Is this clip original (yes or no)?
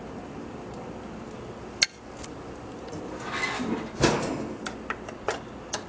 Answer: yes